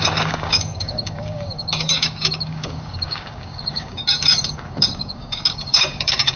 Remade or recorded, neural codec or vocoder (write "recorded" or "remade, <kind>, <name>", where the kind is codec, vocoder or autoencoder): remade, codec, DAC